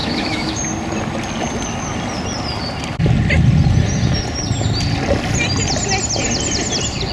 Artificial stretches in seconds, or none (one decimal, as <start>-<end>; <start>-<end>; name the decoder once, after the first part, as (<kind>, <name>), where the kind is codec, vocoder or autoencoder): 0.0-0.6 (autoencoder, DAC-VAE)